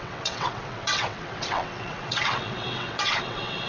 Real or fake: fake